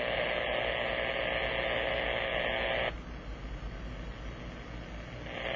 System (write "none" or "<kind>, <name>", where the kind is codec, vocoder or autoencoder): none